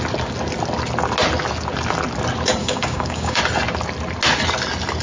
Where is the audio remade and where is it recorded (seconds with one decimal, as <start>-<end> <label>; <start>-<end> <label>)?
0.0-2.6 recorded; 2.6-3.4 remade; 3.4-5.0 recorded